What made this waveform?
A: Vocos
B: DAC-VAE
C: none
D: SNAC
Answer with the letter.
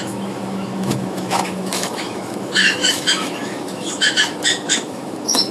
B